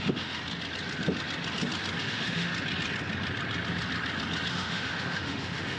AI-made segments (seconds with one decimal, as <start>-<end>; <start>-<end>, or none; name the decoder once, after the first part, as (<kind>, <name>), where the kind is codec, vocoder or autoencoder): 0.0-0.4 (autoencoder, DAC-VAE); 2.0-2.5; 4.5-5.8